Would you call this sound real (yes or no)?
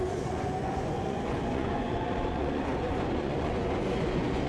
no